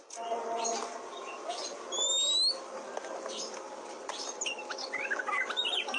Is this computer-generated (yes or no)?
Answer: no